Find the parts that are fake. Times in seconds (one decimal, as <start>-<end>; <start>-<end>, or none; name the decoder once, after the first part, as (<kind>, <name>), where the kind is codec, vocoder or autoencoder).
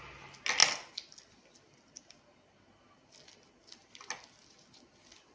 none